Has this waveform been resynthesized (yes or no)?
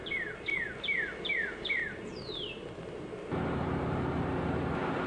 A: no